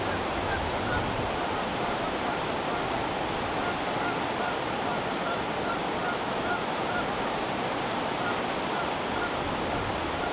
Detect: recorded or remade recorded